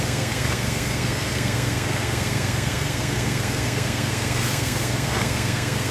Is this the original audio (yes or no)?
no